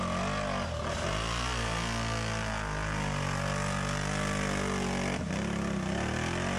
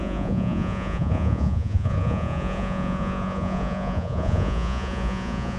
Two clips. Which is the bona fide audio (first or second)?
first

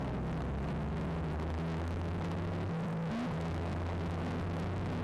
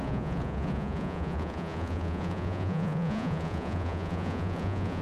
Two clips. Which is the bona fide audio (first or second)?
first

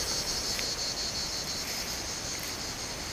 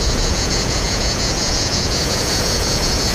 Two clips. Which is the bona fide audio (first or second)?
first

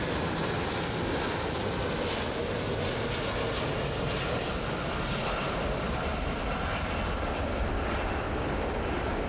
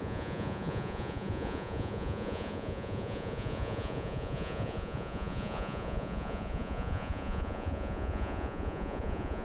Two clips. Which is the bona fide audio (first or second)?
first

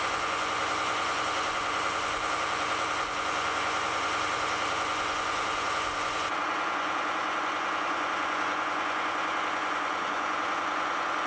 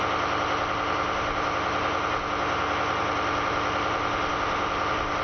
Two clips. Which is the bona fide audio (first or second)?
second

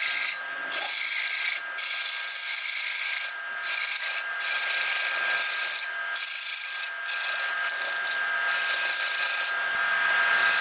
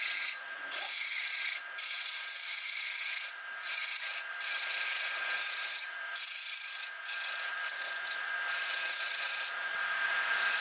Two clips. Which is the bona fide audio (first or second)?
first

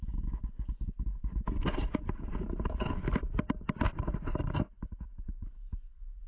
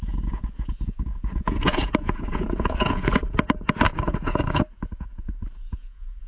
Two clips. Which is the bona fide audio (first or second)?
first